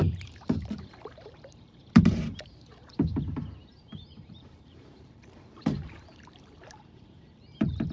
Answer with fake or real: fake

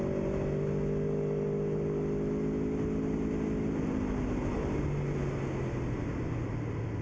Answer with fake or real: real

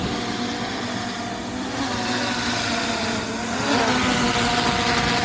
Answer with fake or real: real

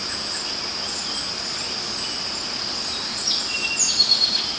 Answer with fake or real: fake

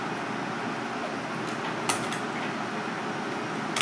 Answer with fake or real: real